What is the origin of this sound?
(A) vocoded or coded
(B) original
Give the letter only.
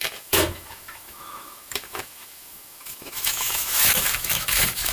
A